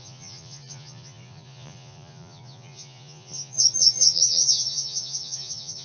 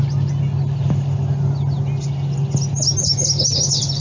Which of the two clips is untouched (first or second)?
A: second